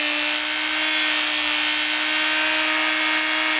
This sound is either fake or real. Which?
real